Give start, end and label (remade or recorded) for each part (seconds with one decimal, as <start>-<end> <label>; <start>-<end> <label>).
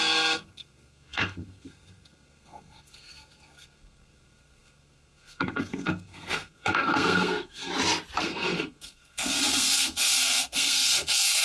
0.0-7.7 remade; 7.7-8.2 recorded; 8.2-11.4 remade